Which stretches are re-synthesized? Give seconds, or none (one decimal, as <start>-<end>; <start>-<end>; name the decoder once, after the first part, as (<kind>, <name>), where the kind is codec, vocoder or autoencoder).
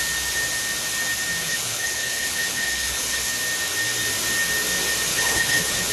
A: 1.4-3.3 (codec, HILCodec); 5.1-5.9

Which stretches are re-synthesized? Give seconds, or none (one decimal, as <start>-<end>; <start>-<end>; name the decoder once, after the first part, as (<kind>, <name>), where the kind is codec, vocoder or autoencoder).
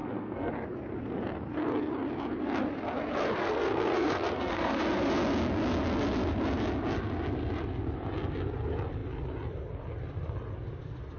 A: 0.0-0.5 (codec, SNAC); 3.4-4.8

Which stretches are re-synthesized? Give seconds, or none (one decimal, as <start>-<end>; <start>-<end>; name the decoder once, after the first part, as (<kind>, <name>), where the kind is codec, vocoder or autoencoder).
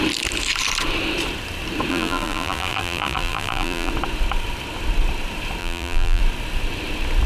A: 1.9-3.9 (vocoder, BigVGAN v2); 5.6-6.2